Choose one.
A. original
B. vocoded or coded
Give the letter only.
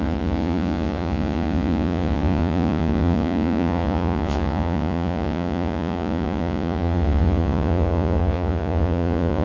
B